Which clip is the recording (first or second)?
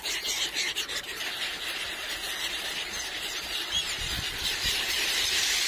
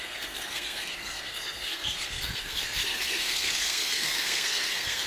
first